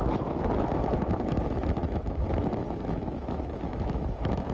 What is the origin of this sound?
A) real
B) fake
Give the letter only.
B